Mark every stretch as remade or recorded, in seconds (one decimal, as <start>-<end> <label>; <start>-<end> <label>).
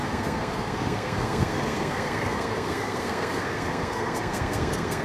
0.0-5.0 remade